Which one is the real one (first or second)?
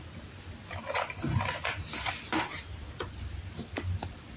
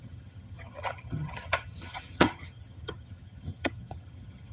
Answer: first